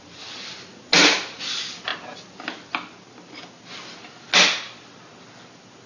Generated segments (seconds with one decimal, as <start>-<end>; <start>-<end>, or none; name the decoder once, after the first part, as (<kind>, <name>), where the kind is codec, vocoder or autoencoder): none